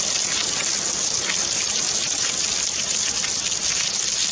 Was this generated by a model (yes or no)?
no